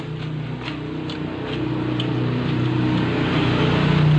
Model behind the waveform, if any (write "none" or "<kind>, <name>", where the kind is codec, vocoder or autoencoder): none